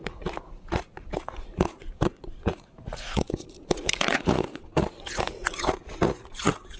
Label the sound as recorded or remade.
remade